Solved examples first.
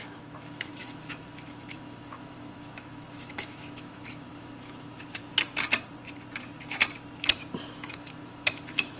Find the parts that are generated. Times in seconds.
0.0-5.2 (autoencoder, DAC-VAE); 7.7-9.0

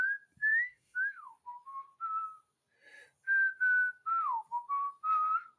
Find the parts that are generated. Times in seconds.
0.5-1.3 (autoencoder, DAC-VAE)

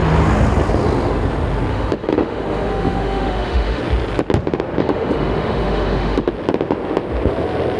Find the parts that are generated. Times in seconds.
1.7-3.8 (autoencoder, DAC-VAE); 4.8-6.3